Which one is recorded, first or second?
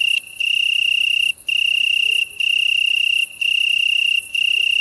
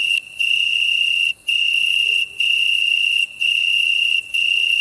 first